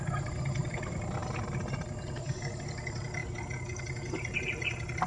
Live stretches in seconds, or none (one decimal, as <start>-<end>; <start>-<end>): 0.0-5.1